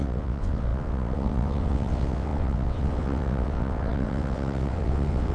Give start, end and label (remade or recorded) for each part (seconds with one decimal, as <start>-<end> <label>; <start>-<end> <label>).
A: 0.0-5.3 remade